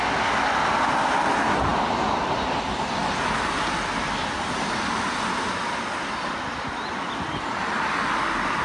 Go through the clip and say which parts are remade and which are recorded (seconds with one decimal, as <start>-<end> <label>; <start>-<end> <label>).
0.0-8.6 recorded